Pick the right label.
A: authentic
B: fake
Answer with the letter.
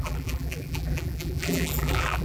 B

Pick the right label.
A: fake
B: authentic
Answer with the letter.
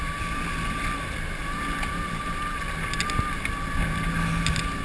B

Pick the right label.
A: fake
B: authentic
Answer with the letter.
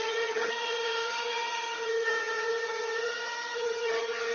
A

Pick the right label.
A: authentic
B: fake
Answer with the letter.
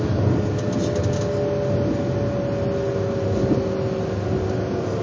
A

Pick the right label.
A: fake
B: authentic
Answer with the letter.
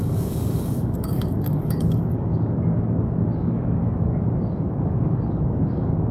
A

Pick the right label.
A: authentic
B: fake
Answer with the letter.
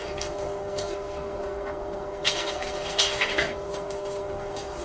B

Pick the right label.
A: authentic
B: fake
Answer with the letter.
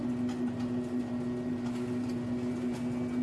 A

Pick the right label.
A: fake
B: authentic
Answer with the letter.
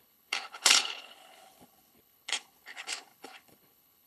A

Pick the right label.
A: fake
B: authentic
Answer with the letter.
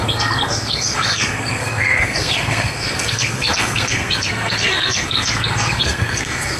A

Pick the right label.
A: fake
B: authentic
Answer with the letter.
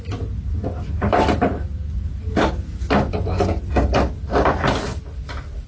B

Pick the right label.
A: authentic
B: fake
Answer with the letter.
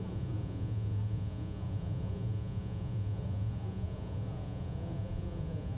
B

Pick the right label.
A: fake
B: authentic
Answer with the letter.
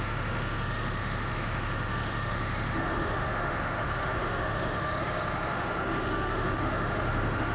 A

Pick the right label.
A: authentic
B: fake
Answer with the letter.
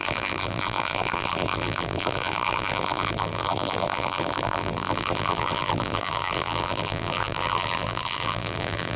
B